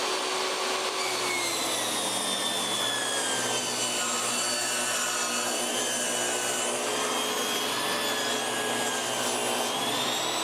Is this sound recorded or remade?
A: recorded